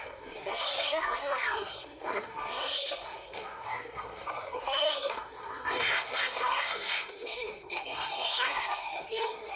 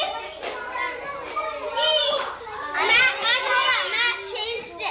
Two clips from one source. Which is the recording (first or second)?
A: second